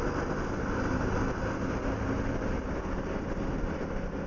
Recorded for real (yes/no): yes